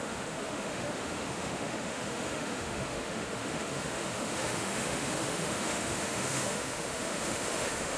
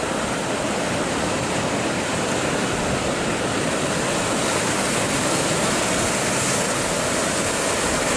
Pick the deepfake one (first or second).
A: first